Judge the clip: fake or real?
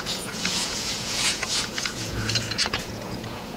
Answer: fake